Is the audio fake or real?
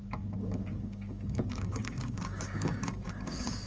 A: fake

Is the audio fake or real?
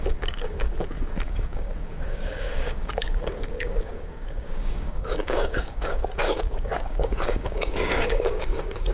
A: fake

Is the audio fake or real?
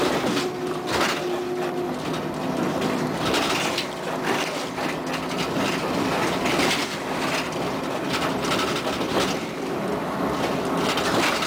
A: real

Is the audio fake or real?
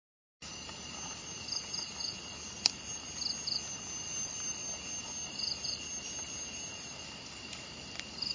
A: real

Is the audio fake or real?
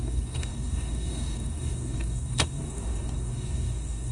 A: fake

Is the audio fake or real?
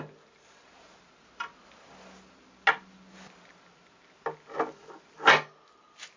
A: real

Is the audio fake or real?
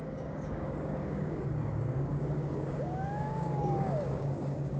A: fake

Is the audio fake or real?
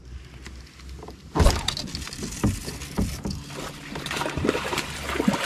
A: real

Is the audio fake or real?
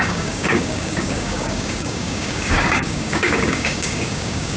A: fake